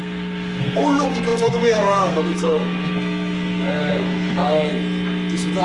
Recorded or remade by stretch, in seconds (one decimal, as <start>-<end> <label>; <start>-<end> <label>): 0.0-4.7 remade; 4.7-5.6 recorded